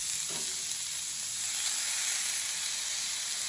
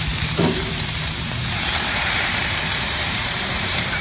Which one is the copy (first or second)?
second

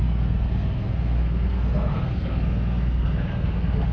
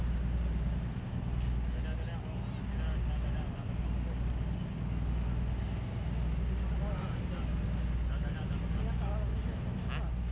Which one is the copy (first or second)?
first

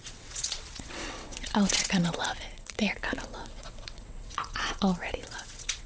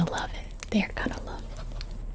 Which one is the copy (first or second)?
first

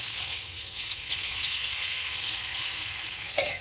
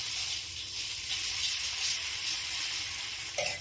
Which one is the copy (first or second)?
first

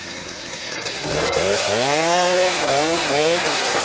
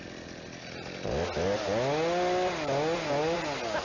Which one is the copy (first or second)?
first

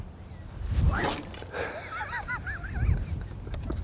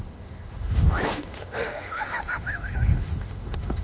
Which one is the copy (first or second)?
second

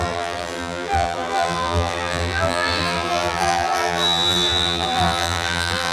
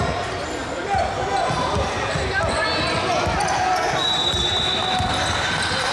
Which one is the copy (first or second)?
first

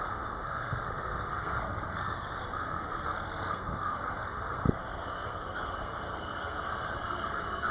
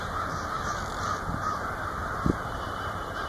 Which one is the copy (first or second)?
first